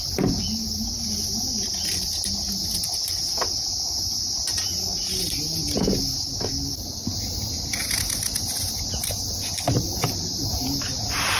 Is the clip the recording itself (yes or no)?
yes